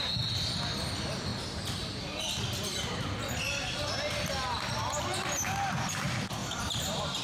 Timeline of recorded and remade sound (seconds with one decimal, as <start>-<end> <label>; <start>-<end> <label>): 0.0-6.4 recorded; 6.4-7.2 remade